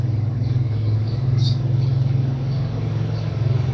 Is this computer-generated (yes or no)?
yes